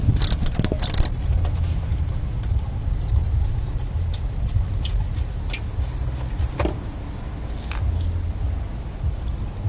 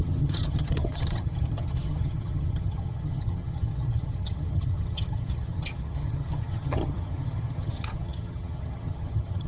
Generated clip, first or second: second